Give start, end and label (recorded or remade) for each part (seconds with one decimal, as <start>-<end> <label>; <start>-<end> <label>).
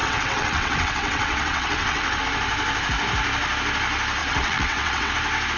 0.0-2.2 remade; 2.2-4.2 recorded; 4.2-5.1 remade; 5.1-5.6 recorded